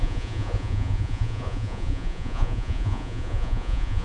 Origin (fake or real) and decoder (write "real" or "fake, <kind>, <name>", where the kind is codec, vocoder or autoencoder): fake, vocoder, Vocos